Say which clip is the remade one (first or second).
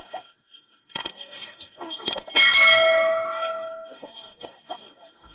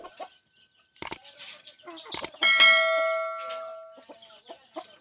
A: first